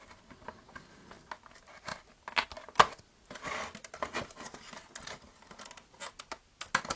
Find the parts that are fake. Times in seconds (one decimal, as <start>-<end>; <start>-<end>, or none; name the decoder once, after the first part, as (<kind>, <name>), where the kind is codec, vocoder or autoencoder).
none